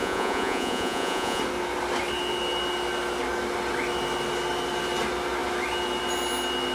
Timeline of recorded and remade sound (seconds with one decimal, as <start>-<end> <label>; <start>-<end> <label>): 0.0-1.4 remade; 1.4-6.7 recorded

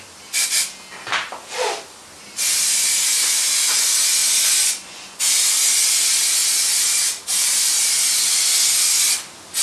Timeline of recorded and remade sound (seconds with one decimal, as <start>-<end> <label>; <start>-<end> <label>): 0.0-4.2 recorded; 4.2-5.2 remade; 5.2-9.6 recorded